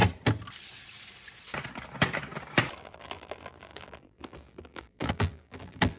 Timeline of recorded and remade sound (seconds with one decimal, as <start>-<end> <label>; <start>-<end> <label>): 0.0-2.8 recorded; 2.8-6.0 remade